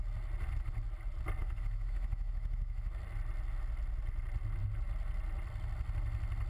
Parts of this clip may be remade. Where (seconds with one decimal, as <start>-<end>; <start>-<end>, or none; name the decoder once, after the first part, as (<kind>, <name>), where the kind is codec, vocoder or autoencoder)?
1.4-2.9 (autoencoder, DAC-VAE)